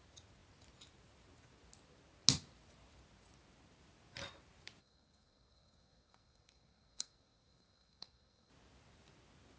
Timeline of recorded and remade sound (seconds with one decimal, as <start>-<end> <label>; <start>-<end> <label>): 0.0-4.8 recorded; 4.8-8.5 remade; 8.5-9.6 recorded